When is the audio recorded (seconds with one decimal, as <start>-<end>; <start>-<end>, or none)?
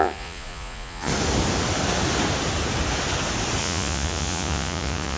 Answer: 1.1-3.6